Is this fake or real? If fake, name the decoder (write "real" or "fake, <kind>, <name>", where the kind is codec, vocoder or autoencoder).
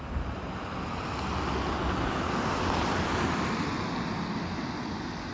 real